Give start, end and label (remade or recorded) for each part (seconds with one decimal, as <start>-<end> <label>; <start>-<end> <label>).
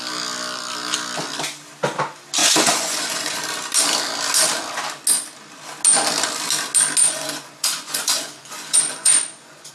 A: 0.0-2.4 recorded; 2.4-3.4 remade; 3.4-7.0 recorded; 7.0-9.7 remade